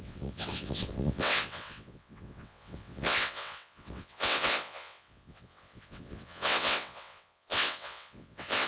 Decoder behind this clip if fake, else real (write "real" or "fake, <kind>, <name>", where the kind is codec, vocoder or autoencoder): fake, vocoder, WaveNeXt